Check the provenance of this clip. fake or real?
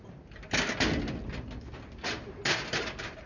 real